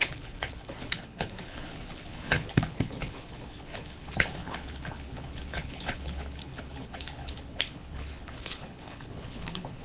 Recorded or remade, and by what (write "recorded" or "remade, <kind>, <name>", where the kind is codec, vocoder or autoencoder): remade, codec, HILCodec